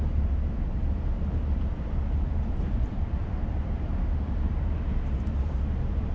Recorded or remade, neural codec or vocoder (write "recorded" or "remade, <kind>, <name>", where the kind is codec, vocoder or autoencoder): remade, vocoder, BigVGAN v2